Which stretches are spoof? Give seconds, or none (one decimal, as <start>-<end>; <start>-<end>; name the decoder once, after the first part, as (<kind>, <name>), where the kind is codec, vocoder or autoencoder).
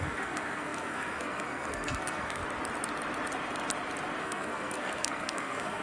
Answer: 0.0-2.4 (codec, SNAC); 4.2-5.8